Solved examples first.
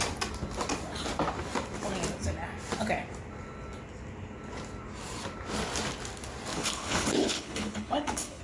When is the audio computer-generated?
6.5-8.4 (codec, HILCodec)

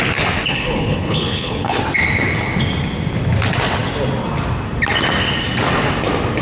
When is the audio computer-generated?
0.5-1.8 (codec, HILCodec)

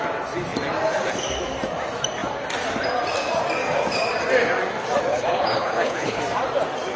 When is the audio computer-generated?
5.1-6.2 (codec, HILCodec)

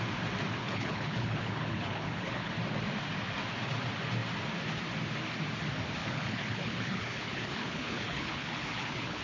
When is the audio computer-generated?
0.6-2.5 (codec, HILCodec); 6.0-9.2

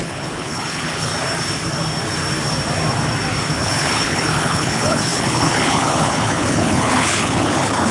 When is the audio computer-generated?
0.0-1.1 (codec, HILCodec); 3.6-7.9

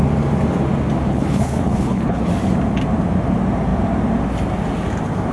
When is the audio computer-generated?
1.1-2.3 (codec, HILCodec)

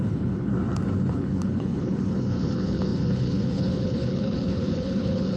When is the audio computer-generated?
0.0-0.5 (codec, HILCodec); 1.1-5.4

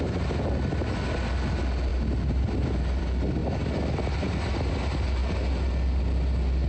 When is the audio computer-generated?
none